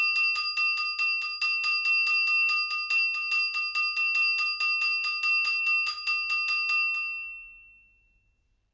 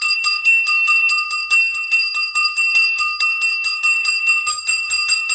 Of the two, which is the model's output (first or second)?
second